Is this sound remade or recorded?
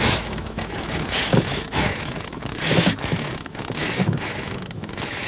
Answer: remade